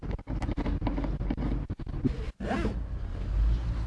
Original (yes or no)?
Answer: yes